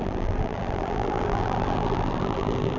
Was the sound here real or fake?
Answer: fake